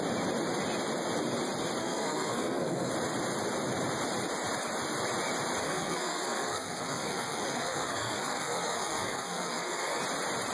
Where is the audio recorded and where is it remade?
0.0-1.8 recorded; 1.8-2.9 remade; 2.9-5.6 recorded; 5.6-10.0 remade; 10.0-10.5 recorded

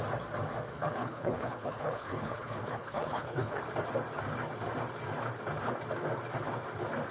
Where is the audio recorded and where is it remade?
0.0-0.7 recorded; 0.7-3.6 remade; 3.6-7.1 recorded